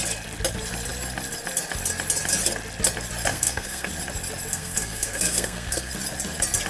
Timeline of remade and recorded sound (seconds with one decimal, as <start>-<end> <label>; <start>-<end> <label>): 0.0-3.3 recorded; 3.3-3.9 remade; 3.9-4.5 recorded; 4.5-5.9 remade; 5.9-6.7 recorded